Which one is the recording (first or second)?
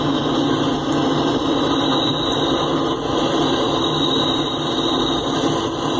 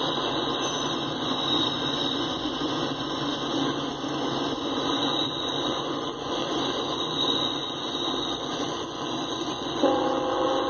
first